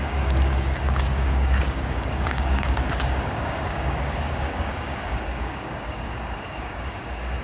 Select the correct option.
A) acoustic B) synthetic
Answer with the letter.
B